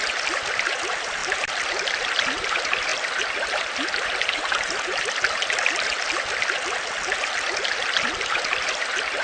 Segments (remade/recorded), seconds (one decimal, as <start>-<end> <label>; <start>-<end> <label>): 0.0-2.9 remade; 2.9-4.4 recorded; 4.4-4.9 remade; 4.9-8.0 recorded; 8.0-9.2 remade